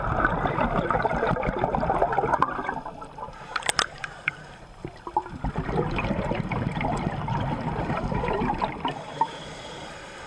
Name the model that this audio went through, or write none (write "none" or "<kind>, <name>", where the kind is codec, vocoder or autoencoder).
vocoder, BigVGAN v2